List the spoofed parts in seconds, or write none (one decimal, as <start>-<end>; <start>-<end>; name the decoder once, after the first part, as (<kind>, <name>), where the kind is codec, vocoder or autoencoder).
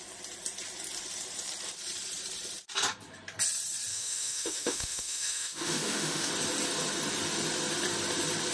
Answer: 3.9-6.3 (autoencoder, DAC-VAE)